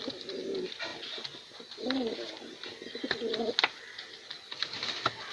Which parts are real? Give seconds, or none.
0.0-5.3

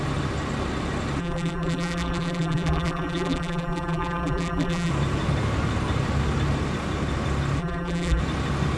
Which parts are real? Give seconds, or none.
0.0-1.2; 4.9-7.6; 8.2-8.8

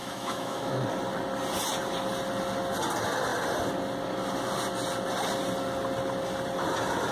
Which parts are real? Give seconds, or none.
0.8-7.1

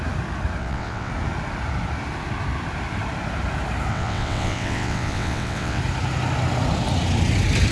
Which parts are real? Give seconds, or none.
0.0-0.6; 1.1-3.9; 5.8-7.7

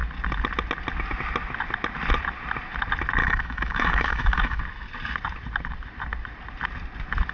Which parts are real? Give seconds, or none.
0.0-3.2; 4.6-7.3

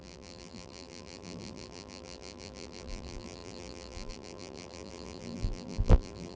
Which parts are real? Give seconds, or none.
none